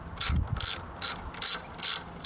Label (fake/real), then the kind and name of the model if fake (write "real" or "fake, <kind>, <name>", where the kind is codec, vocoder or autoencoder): real